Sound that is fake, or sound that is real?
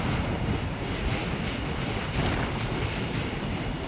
real